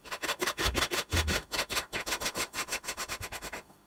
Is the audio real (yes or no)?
no